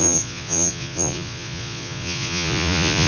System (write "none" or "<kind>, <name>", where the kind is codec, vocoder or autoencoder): vocoder, Vocos